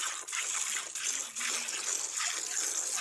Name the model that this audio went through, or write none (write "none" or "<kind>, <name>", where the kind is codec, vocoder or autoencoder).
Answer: none